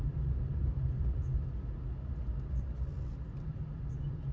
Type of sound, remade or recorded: recorded